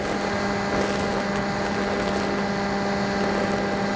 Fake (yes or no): no